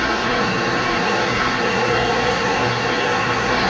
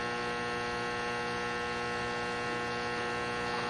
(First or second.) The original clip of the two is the second